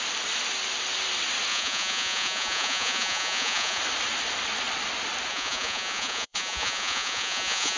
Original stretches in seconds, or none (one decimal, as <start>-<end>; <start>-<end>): 0.0-1.5; 3.8-5.3